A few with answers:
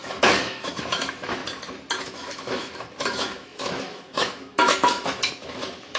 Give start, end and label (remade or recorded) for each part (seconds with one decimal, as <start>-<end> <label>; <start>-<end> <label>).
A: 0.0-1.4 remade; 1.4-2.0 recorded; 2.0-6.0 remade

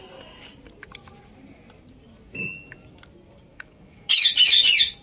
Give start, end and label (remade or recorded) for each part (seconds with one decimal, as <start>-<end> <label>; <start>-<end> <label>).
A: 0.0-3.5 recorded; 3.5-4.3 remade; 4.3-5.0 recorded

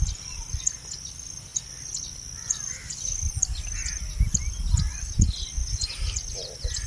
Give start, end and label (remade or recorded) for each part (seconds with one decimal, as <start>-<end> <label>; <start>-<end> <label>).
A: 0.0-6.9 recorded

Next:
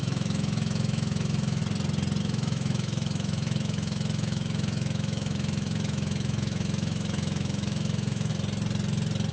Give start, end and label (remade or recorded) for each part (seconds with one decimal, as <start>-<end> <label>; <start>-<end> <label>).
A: 0.0-1.6 remade; 1.6-2.2 recorded; 2.2-8.3 remade; 8.3-9.3 recorded

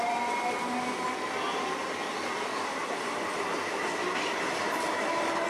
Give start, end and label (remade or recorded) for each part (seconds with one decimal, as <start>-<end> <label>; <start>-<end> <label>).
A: 0.0-5.5 recorded

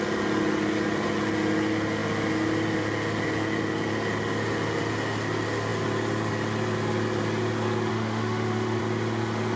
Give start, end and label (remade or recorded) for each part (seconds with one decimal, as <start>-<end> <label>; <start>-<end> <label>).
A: 0.0-7.9 recorded; 7.9-8.8 remade; 8.8-9.6 recorded

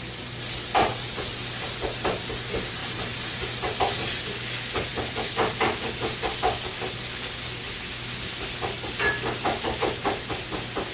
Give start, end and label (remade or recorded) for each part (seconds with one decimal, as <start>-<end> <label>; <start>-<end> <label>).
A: 0.0-10.9 recorded